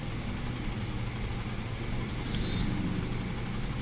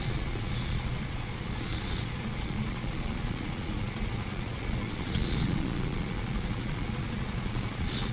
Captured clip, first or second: first